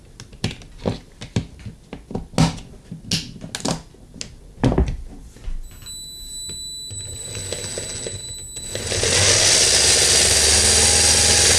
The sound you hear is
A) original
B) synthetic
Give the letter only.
A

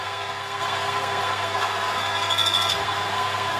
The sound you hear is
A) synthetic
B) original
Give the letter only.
A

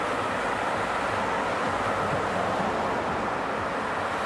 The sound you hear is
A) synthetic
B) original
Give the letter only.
B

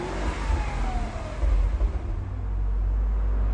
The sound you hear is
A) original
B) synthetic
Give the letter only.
A